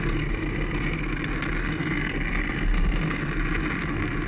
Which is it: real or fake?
real